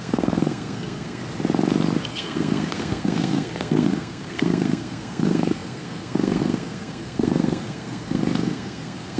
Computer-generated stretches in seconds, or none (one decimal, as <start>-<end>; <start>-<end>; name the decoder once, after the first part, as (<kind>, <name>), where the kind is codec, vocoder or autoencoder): 0.0-1.2 (codec, SNAC); 2.1-9.2